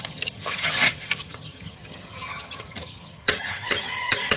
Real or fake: fake